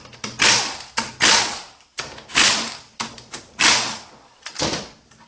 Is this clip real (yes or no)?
no